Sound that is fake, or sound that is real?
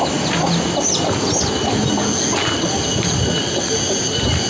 real